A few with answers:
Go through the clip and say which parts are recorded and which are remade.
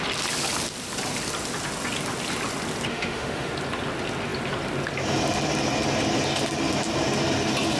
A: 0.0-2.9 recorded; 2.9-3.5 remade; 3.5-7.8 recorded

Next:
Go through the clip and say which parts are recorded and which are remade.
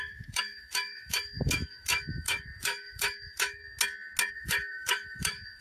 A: 0.0-3.6 remade; 3.6-4.3 recorded; 4.3-5.6 remade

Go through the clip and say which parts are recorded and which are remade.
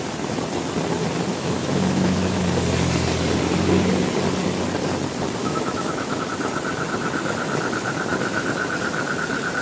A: 0.0-1.3 recorded; 1.3-2.4 remade; 2.4-5.4 recorded; 5.4-6.3 remade; 6.3-9.6 recorded